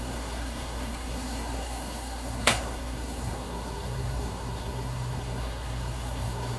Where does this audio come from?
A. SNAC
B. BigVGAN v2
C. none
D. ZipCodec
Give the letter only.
A